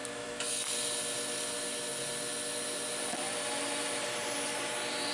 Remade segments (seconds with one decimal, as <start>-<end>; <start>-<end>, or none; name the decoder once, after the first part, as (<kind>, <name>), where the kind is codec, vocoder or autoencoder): 0.0-0.5 (autoencoder, DAC-VAE)